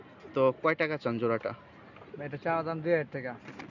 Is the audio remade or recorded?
recorded